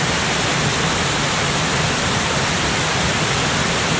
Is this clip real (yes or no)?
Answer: yes